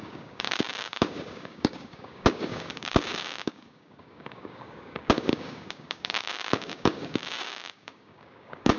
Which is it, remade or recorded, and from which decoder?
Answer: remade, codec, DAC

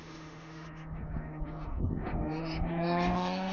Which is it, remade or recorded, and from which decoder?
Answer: remade, autoencoder, DAC-VAE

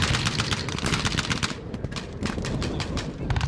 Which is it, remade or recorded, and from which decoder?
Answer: recorded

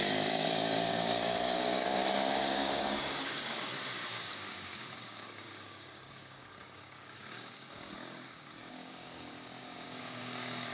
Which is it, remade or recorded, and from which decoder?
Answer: remade, codec, DAC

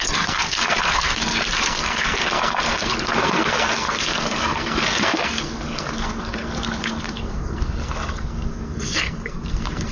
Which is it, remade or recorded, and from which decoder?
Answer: remade, codec, SNAC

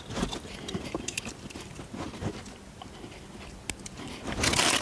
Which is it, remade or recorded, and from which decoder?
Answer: recorded